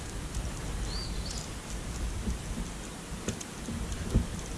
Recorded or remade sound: recorded